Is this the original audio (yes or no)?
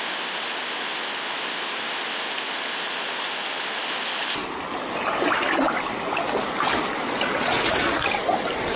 yes